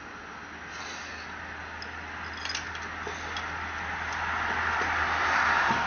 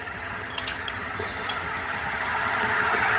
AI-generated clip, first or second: second